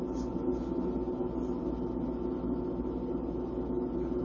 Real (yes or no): yes